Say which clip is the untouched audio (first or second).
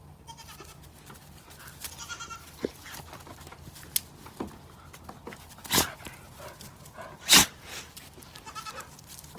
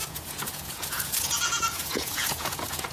first